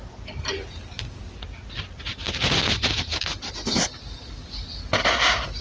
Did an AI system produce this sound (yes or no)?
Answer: no